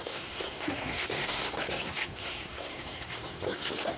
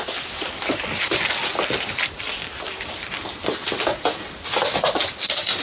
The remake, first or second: first